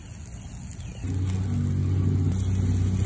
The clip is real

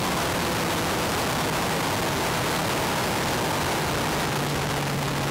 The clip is real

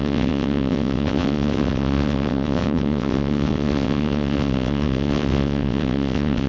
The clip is fake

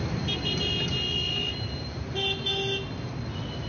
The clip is real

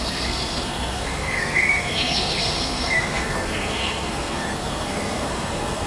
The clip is fake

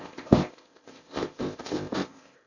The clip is fake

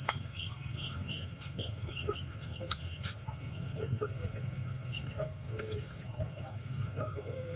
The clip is fake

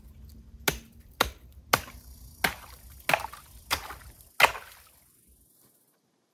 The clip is real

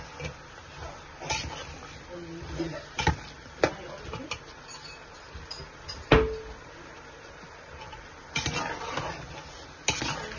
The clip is real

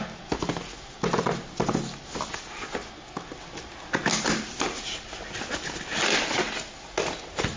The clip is real